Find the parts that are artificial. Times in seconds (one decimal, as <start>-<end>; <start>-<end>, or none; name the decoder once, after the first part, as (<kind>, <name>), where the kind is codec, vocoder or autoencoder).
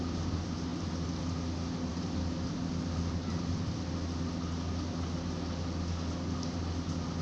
none